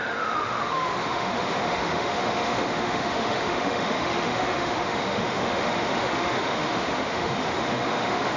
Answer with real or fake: fake